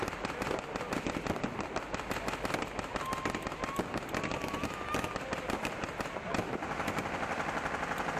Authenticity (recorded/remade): recorded